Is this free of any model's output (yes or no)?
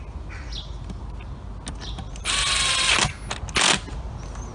yes